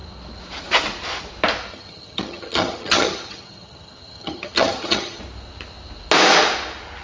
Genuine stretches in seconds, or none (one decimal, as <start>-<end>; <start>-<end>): 0.0-1.7; 5.2-7.0